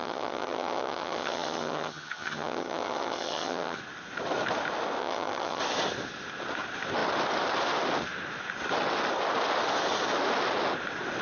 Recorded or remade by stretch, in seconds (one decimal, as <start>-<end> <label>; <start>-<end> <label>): 0.0-3.8 remade; 3.8-5.0 recorded; 5.0-5.6 remade; 5.6-11.2 recorded